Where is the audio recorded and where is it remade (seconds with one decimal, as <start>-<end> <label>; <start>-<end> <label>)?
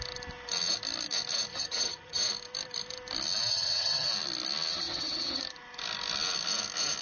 0.0-1.5 recorded; 1.5-2.2 remade; 2.2-3.5 recorded; 3.5-4.1 remade; 4.1-4.7 recorded; 4.7-5.4 remade; 5.4-7.0 recorded